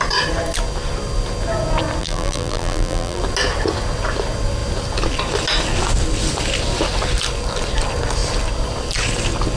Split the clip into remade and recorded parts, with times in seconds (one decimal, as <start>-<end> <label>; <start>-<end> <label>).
0.0-2.0 recorded; 2.0-3.2 remade; 3.2-9.6 recorded